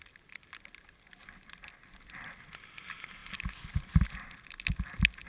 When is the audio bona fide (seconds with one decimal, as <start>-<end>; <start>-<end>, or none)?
0.0-5.3